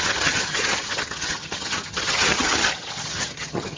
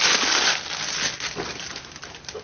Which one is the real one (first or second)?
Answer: second